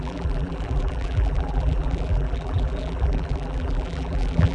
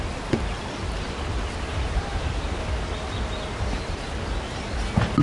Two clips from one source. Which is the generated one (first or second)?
first